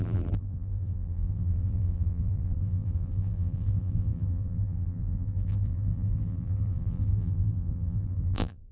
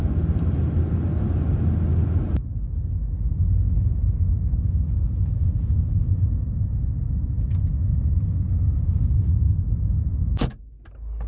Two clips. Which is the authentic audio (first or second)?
second